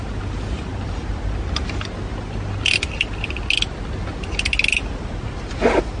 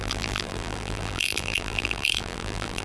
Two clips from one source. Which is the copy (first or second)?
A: second